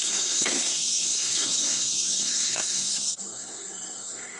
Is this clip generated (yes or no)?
yes